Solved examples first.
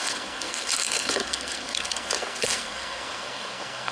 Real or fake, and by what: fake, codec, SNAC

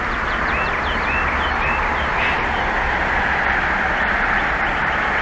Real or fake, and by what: real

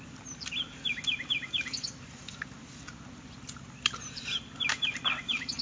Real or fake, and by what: real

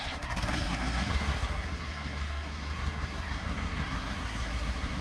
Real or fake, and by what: fake, codec, SNAC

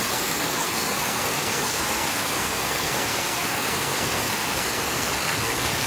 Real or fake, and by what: fake, codec, SNAC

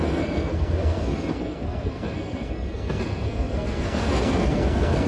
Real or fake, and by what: fake, codec, SNAC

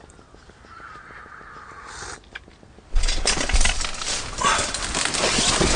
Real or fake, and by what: real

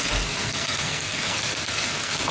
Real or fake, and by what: fake, codec, SNAC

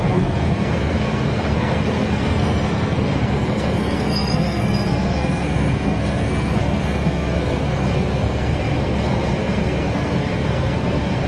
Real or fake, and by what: fake, codec, SNAC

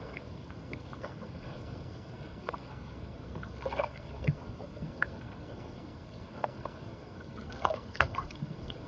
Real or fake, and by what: fake, codec, SNAC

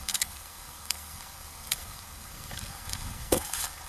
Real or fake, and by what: fake, codec, SNAC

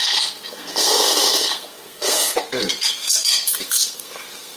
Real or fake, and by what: fake, codec, SNAC